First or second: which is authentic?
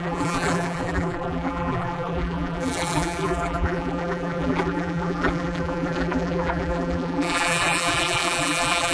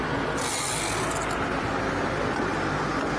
second